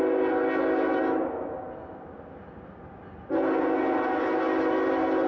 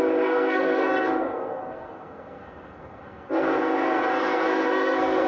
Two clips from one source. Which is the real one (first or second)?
first